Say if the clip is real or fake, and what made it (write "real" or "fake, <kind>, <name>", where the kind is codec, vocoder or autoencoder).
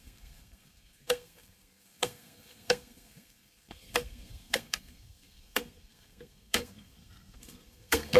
fake, codec, SNAC